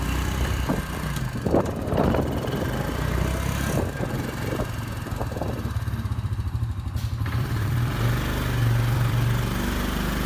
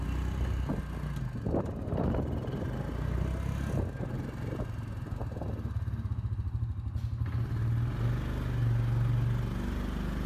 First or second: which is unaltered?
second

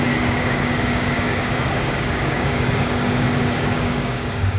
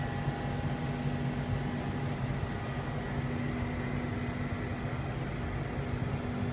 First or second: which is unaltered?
second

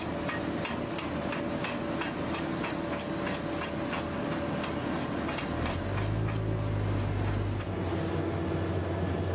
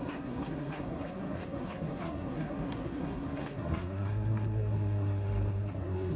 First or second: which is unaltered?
first